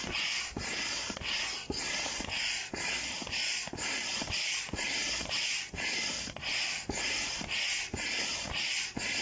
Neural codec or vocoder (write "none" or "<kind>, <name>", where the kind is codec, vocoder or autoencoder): none